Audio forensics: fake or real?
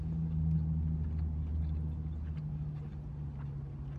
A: real